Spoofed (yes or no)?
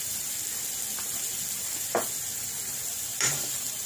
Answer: yes